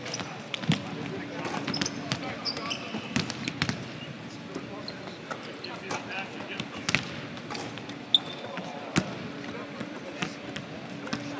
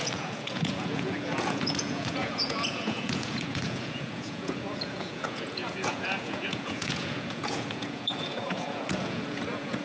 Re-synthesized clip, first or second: second